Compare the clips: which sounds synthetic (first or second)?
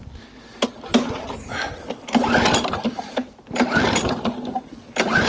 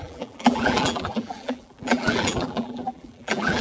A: second